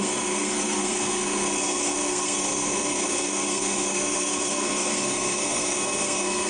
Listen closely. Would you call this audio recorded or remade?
remade